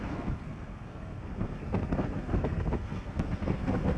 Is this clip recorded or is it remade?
remade